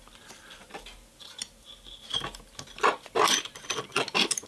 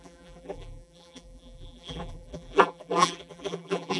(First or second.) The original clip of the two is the first